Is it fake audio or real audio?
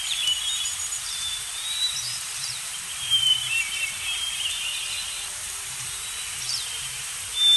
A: fake